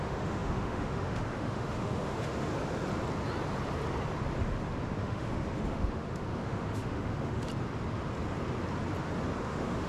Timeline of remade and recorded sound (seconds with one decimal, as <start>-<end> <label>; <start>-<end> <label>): 0.0-2.5 remade; 2.5-5.0 recorded; 5.0-7.5 remade; 7.5-9.4 recorded; 9.4-9.9 remade